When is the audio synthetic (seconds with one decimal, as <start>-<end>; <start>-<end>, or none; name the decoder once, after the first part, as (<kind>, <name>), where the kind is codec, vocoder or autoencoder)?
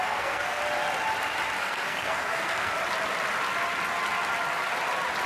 0.0-0.6 (codec, SNAC); 1.6-2.7